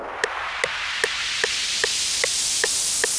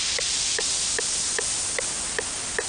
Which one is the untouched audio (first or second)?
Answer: first